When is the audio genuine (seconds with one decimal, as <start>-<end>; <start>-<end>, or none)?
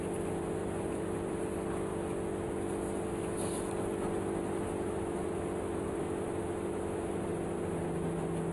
0.0-0.6; 1.4-8.5